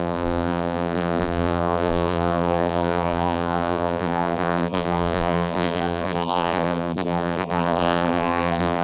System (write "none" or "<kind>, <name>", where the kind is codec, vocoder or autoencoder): vocoder, BigVGAN v2